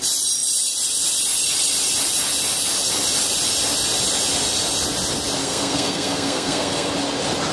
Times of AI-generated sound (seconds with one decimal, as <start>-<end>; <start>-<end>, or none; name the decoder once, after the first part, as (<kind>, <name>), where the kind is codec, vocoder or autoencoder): 5.4-6.9 (codec, SNAC)